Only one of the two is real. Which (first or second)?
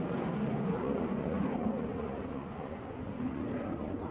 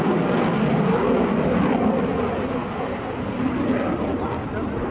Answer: second